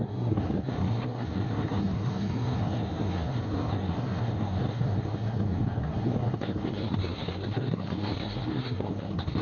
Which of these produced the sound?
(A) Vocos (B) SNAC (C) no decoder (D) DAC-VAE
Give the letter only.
B